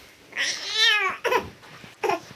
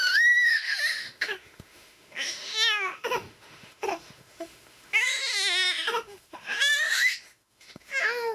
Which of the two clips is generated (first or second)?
second